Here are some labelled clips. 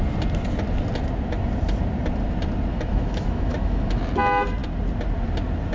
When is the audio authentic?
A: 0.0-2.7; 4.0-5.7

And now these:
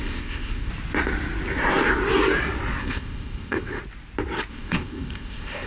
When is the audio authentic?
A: 0.7-2.8; 3.8-4.5

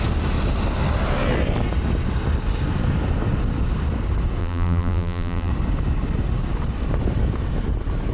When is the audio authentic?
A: 0.0-4.4; 5.5-8.1